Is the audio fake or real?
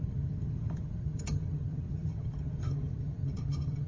fake